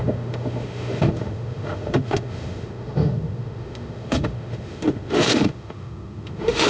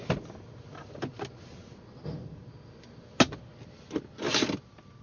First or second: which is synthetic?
first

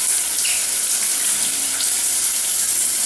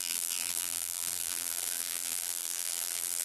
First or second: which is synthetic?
second